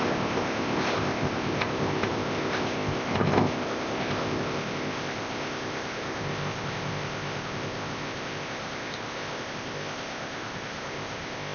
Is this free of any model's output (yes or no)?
no